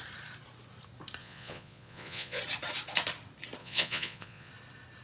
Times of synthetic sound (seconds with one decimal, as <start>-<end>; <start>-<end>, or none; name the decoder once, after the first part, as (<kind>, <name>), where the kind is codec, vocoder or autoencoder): 1.2-2.4 (vocoder, Vocos); 3.6-4.5